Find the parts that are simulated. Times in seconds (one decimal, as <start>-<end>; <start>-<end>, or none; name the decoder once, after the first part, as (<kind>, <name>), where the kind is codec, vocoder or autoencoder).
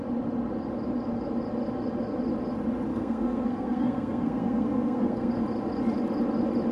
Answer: 2.9-5.3 (codec, SNAC)